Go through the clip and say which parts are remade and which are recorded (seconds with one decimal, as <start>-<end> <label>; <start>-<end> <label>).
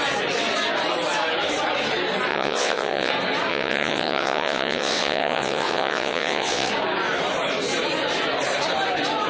0.0-2.3 recorded; 2.3-3.1 remade; 3.1-3.5 recorded; 3.5-6.7 remade; 6.7-9.3 recorded